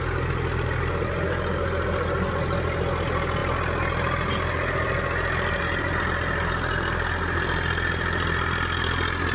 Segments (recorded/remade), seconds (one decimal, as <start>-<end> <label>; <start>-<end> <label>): 0.0-9.3 recorded